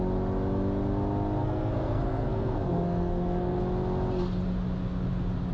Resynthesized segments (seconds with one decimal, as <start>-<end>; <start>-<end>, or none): 1.4-3.6